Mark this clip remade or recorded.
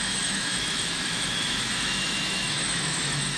remade